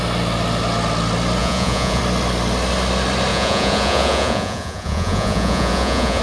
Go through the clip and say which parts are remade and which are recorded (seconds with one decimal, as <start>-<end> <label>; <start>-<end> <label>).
0.0-1.4 recorded; 1.4-2.0 remade; 2.0-3.3 recorded; 3.3-6.2 remade